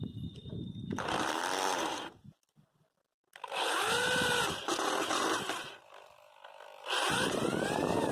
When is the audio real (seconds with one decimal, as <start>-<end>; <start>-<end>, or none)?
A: 0.0-8.1